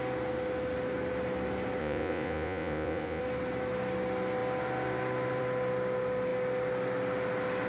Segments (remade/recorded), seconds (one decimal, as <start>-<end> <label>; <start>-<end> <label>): 0.0-1.8 recorded; 1.8-3.2 remade; 3.2-7.7 recorded